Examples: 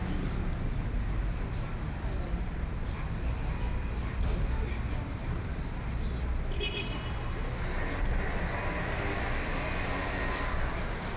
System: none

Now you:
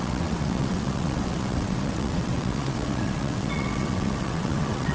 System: vocoder, WaveNeXt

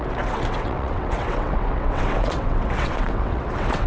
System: vocoder, WaveNeXt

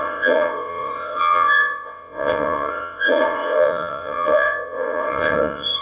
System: vocoder, WaveNeXt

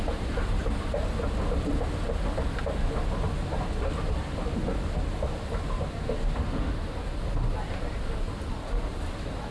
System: none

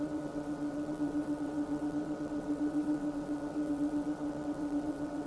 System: vocoder, WaveNeXt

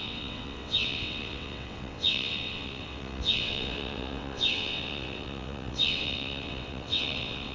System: vocoder, WaveNeXt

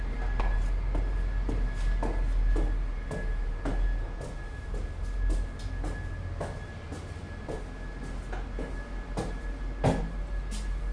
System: none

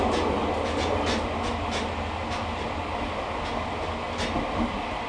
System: none